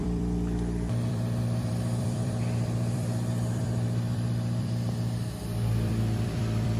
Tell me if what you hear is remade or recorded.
remade